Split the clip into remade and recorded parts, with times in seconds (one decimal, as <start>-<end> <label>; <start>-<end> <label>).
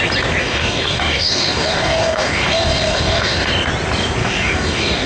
0.0-0.4 recorded; 0.4-3.5 remade; 3.5-4.2 recorded; 4.2-5.1 remade